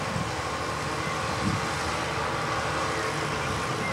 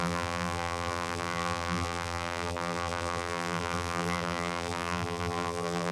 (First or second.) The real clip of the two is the first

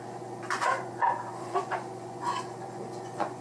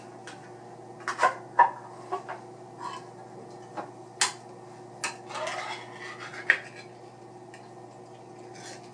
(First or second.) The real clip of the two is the second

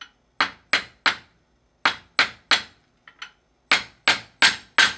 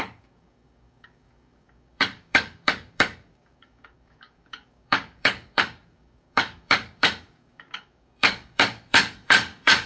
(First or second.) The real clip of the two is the first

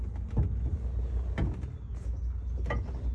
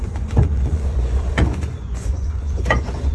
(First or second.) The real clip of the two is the first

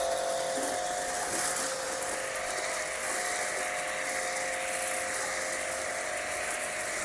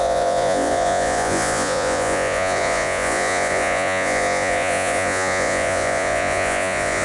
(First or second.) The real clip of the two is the first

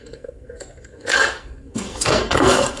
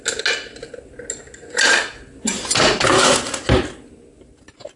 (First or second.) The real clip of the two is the second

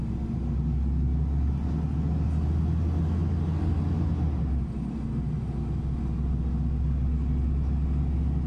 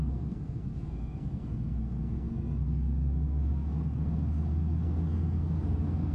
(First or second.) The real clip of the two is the first